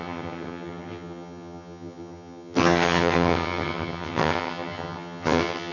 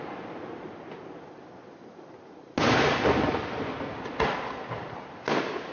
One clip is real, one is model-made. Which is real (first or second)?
second